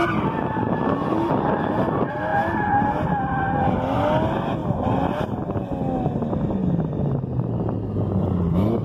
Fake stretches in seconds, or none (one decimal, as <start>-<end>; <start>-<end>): none